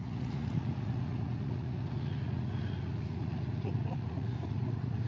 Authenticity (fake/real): fake